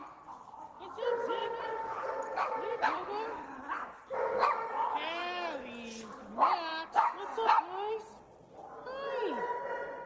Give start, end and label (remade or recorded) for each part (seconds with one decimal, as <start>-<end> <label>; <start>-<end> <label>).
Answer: 0.0-10.1 recorded

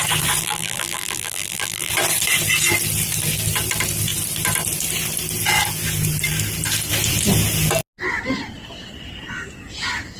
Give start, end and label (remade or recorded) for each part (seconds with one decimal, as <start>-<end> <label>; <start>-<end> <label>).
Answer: 0.0-0.4 recorded; 0.4-1.9 remade; 1.9-10.2 recorded

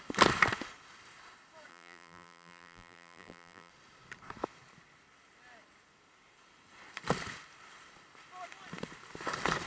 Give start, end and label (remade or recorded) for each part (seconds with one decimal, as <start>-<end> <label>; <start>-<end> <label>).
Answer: 0.0-1.7 recorded; 1.7-3.7 remade; 3.7-9.7 recorded

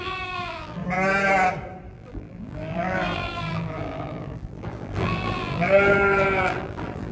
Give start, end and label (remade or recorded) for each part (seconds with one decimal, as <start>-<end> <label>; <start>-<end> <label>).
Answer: 0.0-0.8 remade; 0.8-1.9 recorded; 1.9-7.1 remade

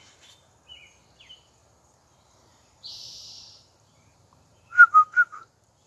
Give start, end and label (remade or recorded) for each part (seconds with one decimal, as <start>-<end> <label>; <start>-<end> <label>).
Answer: 0.0-1.6 recorded; 1.6-4.9 remade; 4.9-5.9 recorded

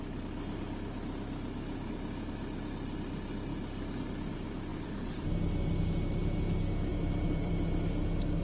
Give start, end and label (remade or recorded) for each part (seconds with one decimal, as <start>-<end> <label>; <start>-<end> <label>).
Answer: 0.0-4.7 recorded; 4.7-5.3 remade; 5.3-6.9 recorded; 6.9-7.5 remade; 7.5-8.4 recorded

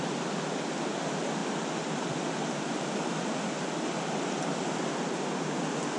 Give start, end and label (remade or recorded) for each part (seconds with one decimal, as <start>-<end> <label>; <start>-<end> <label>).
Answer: 0.0-1.4 recorded; 1.4-4.8 remade; 4.8-6.0 recorded

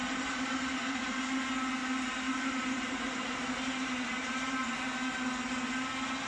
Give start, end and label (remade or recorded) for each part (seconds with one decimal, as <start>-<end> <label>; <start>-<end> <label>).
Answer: 0.0-1.2 remade; 1.2-1.8 recorded; 1.8-4.8 remade; 4.8-6.3 recorded